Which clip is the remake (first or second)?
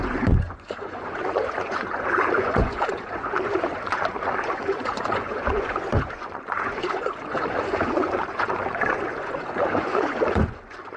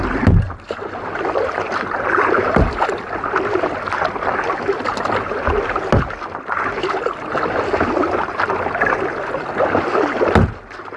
first